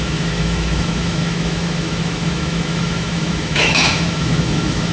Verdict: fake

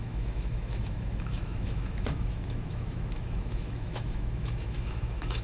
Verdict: fake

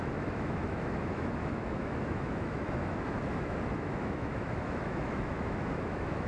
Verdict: fake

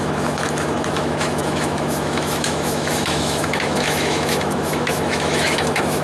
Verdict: fake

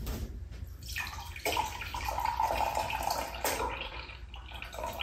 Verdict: real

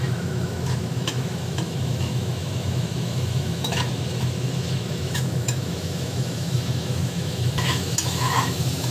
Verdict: fake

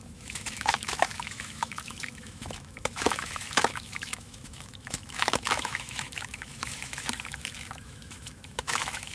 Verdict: fake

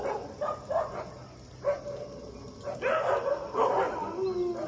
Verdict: real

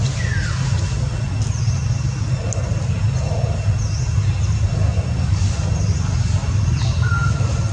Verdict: real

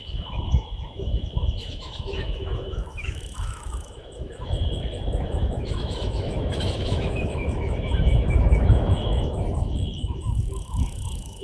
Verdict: fake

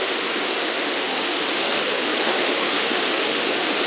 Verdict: fake